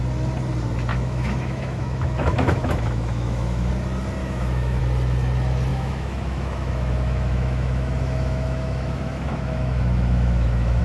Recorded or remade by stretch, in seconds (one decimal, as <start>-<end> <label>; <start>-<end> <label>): 0.0-0.9 recorded; 0.9-3.7 remade; 3.7-4.2 recorded; 4.2-4.8 remade; 4.8-5.7 recorded; 5.7-10.8 remade